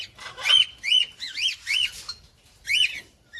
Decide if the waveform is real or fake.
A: real